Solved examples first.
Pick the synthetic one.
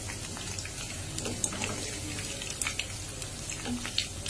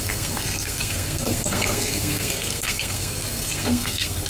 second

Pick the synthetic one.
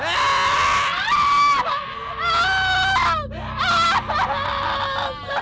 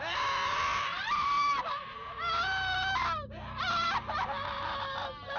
second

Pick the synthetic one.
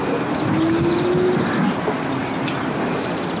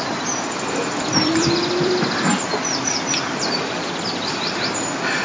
second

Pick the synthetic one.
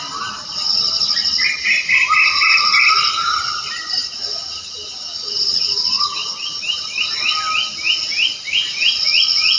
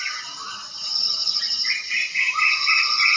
second